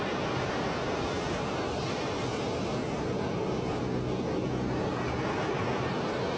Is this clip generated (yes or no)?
no